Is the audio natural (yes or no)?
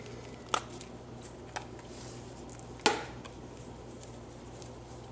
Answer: yes